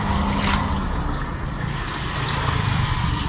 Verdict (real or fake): real